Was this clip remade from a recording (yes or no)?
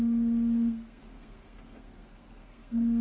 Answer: yes